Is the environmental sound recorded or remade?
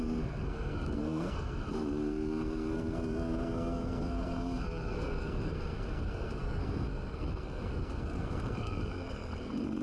remade